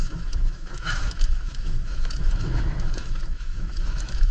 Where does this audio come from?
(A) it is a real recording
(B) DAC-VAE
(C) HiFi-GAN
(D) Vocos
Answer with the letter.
B